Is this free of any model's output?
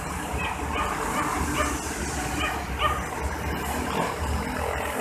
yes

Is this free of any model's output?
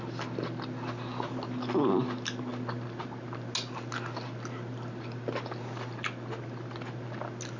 yes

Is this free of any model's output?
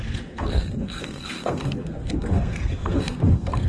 no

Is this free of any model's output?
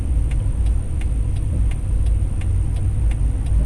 yes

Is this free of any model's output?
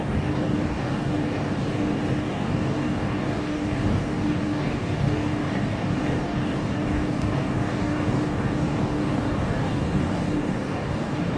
no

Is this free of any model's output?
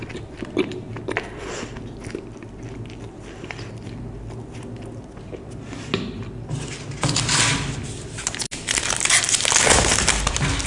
yes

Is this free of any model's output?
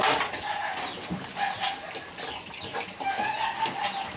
yes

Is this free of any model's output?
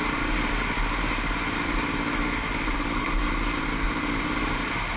yes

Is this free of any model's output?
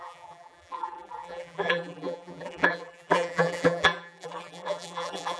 no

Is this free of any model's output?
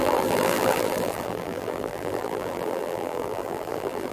no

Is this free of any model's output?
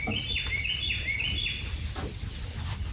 yes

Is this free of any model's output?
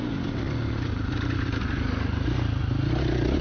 yes